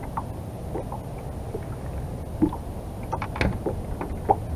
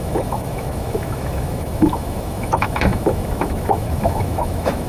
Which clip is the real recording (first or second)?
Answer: first